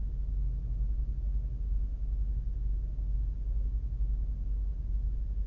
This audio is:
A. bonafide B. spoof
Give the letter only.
A